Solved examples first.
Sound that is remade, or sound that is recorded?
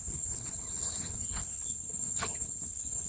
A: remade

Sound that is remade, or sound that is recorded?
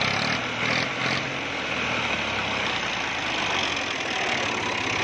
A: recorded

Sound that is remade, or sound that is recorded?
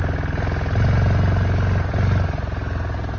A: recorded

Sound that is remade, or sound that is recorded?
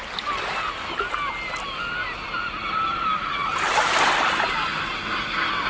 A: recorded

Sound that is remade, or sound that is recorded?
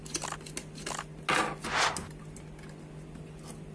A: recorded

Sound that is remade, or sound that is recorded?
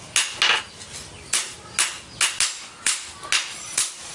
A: recorded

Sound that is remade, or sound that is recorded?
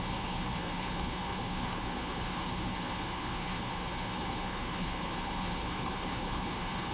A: remade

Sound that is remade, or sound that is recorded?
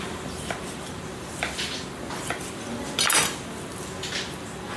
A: recorded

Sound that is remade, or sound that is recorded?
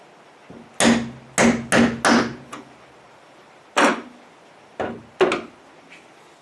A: recorded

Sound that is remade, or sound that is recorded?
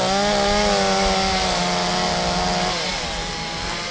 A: recorded